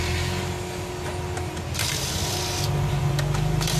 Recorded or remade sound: recorded